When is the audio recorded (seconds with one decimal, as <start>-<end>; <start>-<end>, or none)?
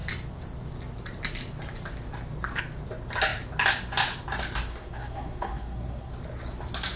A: 0.0-4.7; 6.1-7.0